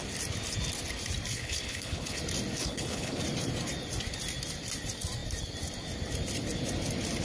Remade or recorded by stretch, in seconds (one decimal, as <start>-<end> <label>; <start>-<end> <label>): 0.0-1.3 recorded; 1.3-2.2 remade; 2.2-2.6 recorded; 2.6-3.2 remade; 3.2-7.2 recorded